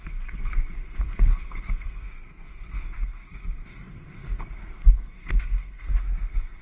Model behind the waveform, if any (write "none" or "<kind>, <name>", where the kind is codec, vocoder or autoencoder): codec, SNAC